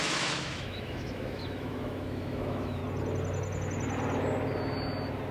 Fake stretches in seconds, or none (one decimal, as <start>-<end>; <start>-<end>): 0.0-2.8